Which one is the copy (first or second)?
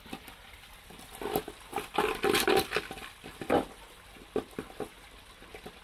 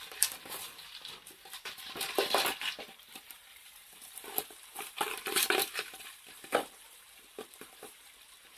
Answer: second